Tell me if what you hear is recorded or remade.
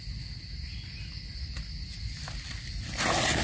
recorded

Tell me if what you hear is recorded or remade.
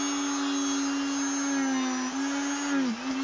recorded